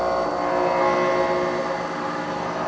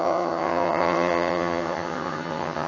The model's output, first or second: second